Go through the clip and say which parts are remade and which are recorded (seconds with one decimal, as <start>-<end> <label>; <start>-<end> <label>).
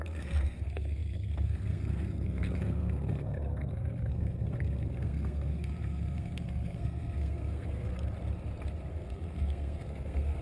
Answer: 0.0-7.9 remade; 7.9-8.9 recorded; 8.9-10.4 remade